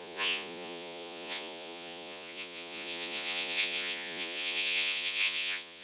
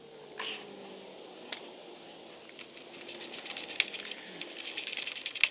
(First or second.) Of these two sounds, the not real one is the first